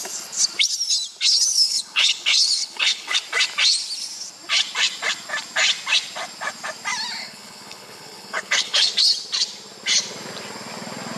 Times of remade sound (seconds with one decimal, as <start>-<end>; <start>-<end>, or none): 1.5-3.2; 7.2-8.9